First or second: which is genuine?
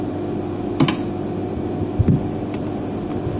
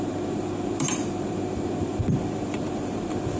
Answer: first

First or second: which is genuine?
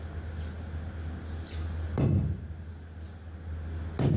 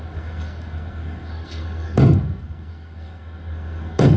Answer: first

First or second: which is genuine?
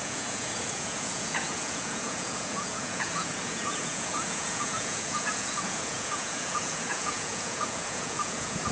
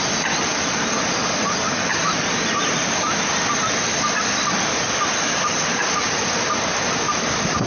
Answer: second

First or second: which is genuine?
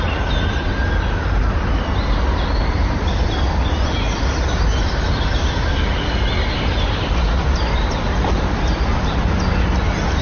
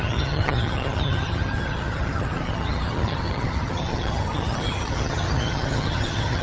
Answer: first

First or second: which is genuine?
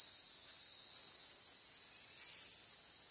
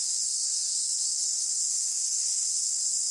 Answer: first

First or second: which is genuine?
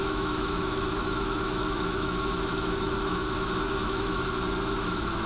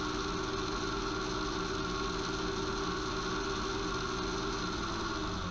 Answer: second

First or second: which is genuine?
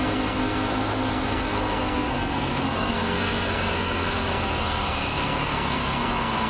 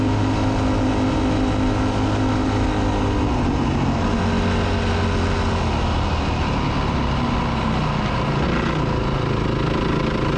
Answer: second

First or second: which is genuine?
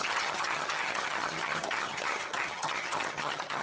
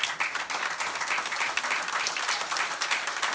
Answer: second